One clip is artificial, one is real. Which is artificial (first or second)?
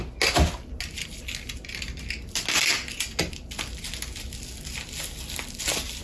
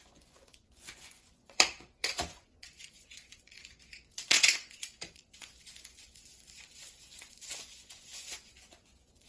second